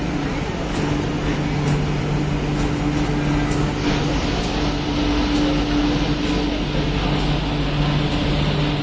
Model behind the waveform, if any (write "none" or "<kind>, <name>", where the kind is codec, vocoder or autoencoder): none